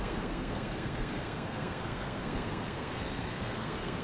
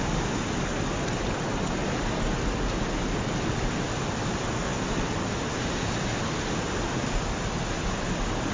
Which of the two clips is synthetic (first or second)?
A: first